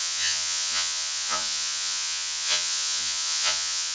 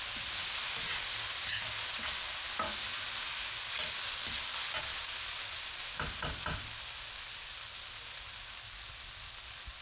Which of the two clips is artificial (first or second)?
first